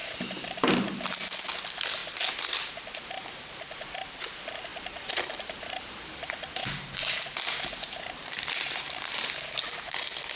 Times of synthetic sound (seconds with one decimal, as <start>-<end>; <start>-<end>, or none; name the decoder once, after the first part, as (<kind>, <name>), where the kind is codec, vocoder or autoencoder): 0.0-1.3 (vocoder, BigVGAN v2); 4.7-9.3